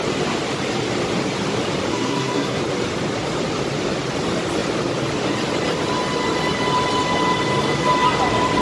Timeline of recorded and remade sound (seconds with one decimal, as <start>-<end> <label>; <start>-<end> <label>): 0.0-1.9 recorded; 1.9-2.6 remade; 2.6-8.6 recorded